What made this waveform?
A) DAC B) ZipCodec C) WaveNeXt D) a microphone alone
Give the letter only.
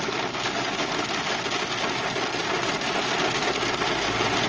D